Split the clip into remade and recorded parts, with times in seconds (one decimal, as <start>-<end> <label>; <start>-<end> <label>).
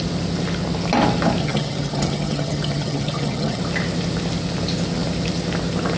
0.0-1.4 recorded; 1.4-3.6 remade; 3.6-6.0 recorded